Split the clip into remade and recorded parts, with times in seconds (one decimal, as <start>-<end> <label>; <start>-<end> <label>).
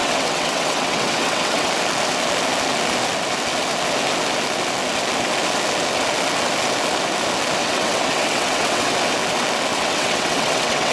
0.0-1.7 remade; 1.7-7.6 recorded; 7.6-8.9 remade; 8.9-9.7 recorded; 9.7-10.9 remade